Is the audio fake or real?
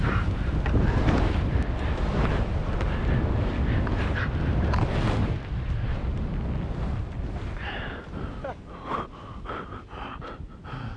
real